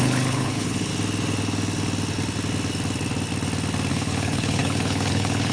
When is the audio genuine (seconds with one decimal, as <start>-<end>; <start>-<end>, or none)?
0.9-3.9